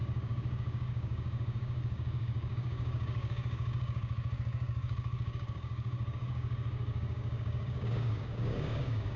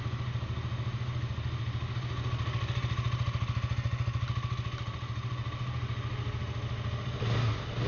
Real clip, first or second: second